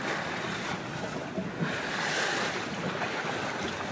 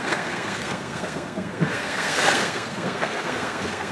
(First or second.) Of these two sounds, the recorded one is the first